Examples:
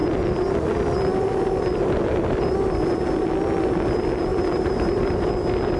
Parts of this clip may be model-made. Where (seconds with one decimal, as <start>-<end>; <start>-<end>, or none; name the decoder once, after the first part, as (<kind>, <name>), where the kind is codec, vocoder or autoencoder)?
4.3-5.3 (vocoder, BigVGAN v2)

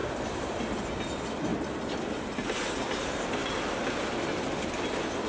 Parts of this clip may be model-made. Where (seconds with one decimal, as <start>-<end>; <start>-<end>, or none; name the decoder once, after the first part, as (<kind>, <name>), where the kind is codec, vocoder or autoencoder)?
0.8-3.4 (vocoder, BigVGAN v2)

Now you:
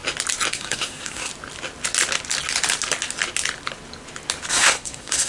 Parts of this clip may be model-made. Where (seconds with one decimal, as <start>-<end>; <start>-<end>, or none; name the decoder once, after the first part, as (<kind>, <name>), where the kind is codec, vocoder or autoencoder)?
0.5-1.3 (codec, SNAC); 4.5-5.3

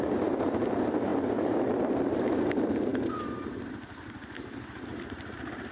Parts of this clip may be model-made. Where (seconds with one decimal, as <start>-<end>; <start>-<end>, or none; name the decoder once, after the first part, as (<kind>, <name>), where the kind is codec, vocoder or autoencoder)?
none

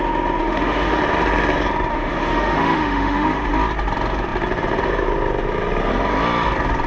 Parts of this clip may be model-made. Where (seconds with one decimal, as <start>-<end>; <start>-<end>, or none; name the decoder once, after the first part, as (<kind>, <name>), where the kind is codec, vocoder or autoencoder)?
0.4-1.0 (autoencoder, DAC-VAE); 1.9-3.5

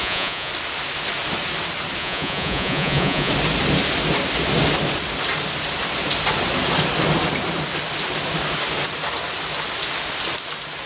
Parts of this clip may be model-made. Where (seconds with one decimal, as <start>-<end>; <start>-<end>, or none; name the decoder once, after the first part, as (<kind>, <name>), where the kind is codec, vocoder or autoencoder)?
0.0-0.5 (vocoder, Vocos); 2.0-3.3

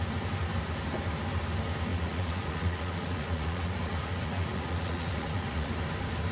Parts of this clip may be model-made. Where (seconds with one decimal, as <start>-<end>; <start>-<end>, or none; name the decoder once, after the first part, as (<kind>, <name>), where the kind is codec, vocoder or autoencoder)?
1.9-5.7 (vocoder, Vocos)

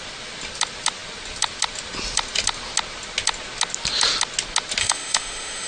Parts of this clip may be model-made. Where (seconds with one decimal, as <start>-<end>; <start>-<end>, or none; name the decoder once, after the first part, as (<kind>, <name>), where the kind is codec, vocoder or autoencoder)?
4.8-5.7 (autoencoder, DAC-VAE)